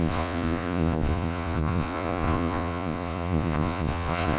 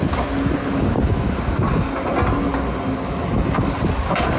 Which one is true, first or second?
second